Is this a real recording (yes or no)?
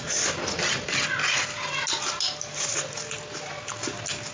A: yes